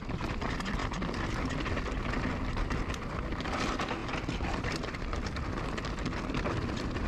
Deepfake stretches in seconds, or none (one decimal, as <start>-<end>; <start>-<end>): none